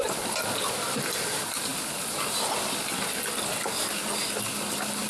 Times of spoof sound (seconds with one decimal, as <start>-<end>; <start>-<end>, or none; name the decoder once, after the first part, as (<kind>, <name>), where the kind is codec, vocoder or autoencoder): none